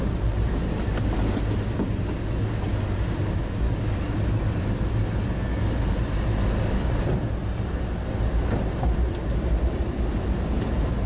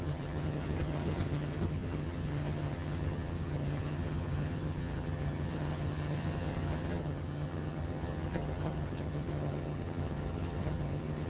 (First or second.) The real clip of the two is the first